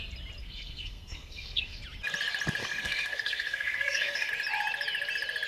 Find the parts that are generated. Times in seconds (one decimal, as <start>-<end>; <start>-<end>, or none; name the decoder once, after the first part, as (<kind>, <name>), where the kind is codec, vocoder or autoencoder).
0.4-1.8 (codec, SNAC); 2.6-4.3